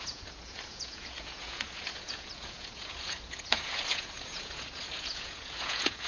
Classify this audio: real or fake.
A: fake